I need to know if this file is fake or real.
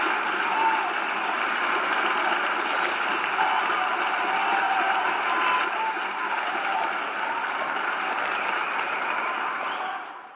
real